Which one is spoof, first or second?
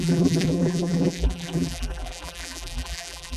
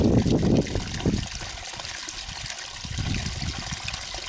first